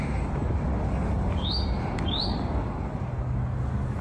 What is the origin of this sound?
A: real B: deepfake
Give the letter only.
B